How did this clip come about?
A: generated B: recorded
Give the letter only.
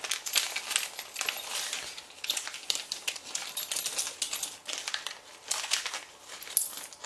B